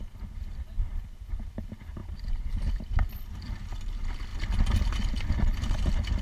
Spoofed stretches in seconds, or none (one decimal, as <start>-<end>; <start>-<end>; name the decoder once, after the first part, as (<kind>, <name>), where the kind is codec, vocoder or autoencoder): none